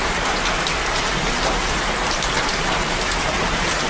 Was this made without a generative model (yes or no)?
no